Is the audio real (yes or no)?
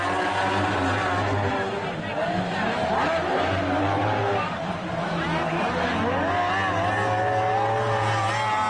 yes